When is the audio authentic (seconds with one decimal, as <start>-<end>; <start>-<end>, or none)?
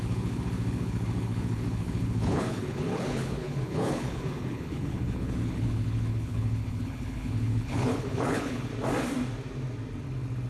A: 8.7-10.5